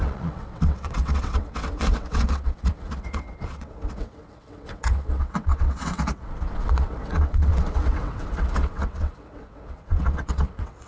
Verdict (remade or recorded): remade